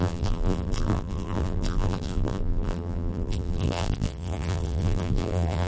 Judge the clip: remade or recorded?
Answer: remade